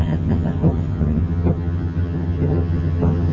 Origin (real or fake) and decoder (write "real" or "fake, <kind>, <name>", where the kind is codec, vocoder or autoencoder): fake, vocoder, HiFi-GAN